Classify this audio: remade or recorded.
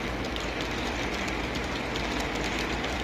recorded